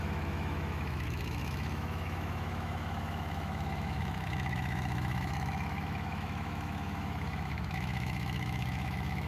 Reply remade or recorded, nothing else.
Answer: remade